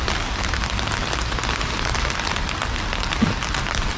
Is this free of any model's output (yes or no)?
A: yes